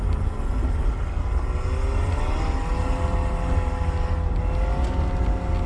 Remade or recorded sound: recorded